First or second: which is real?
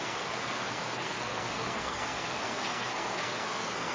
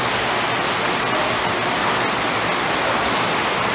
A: second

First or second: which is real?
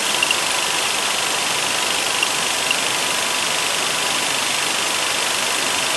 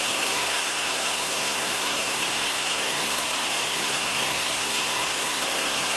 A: first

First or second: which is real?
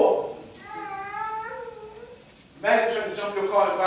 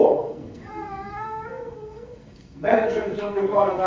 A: first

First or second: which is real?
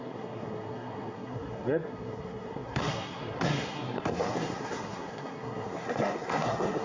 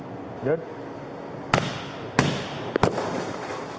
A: second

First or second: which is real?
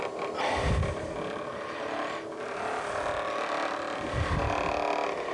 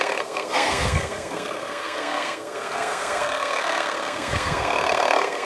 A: first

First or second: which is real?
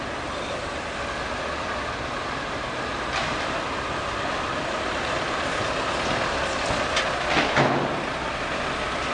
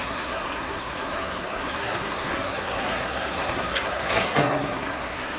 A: first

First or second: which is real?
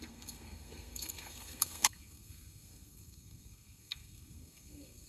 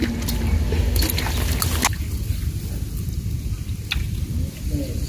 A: second